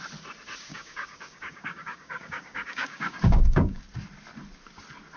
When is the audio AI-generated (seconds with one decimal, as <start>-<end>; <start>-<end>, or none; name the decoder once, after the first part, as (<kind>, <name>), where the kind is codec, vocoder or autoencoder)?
0.7-3.8 (codec, DAC)